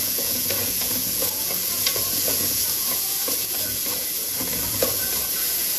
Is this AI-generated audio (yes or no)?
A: yes